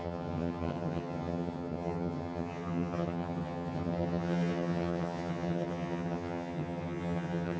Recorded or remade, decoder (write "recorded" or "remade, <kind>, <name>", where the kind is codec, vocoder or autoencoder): remade, vocoder, HiFi-GAN